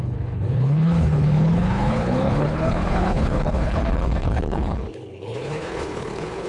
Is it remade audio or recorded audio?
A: remade